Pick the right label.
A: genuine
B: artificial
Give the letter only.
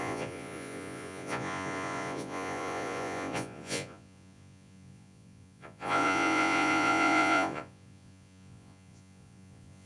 B